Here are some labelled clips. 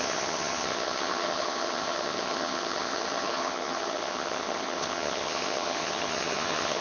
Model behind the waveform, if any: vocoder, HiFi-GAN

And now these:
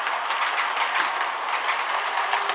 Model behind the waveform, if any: none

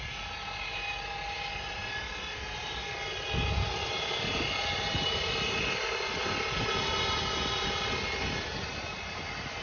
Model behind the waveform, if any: none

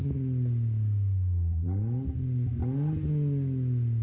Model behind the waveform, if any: none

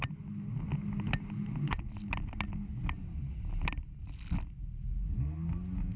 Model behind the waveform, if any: none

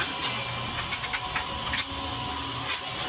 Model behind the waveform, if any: none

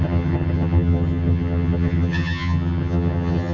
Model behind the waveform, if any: vocoder, HiFi-GAN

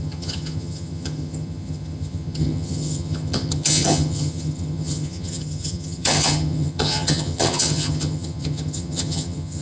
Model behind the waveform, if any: vocoder, HiFi-GAN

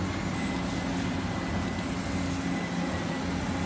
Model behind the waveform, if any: none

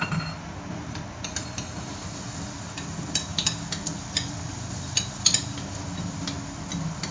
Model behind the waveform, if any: none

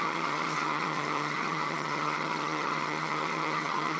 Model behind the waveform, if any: vocoder, HiFi-GAN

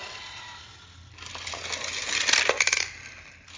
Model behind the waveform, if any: none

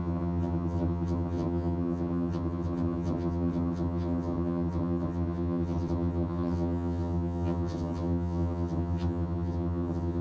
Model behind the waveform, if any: vocoder, HiFi-GAN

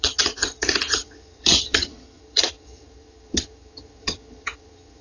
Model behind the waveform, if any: vocoder, HiFi-GAN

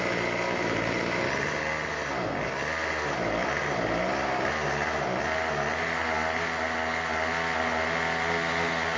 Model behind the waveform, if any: none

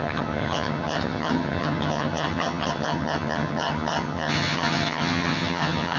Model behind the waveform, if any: vocoder, HiFi-GAN